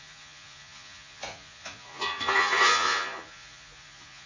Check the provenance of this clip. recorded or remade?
remade